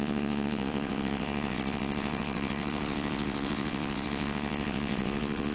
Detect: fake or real fake